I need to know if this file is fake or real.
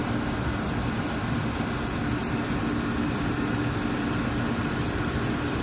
real